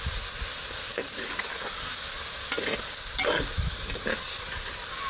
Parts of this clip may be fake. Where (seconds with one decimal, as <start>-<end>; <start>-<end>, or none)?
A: none